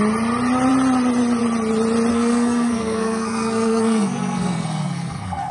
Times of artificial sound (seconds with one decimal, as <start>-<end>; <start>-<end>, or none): 2.1-5.5